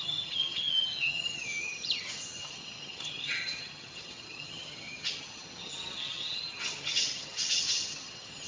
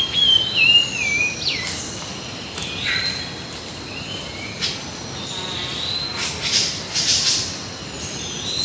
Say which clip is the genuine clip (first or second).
second